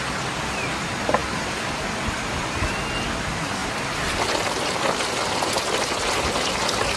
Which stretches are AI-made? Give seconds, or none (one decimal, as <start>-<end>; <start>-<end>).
3.6-6.2